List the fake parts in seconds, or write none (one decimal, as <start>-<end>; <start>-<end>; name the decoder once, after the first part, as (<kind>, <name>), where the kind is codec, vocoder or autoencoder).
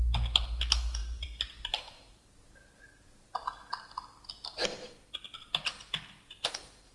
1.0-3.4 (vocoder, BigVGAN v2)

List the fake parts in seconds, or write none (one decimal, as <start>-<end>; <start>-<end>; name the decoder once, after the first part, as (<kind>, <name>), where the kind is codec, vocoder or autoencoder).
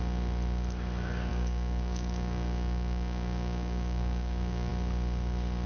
1.3-4.7 (codec, DAC)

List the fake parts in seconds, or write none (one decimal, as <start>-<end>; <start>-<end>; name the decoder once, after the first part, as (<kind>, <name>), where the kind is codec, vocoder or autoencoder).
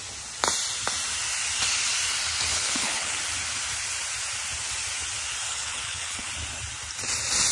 2.5-3.2 (codec, HILCodec); 5.5-6.3